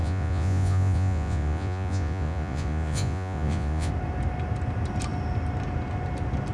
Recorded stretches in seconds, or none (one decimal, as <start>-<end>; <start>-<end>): 3.9-6.5